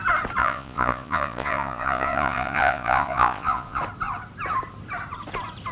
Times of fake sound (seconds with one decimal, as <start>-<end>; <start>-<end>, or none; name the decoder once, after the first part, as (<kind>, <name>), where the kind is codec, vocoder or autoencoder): 0.4-3.8 (vocoder, Vocos)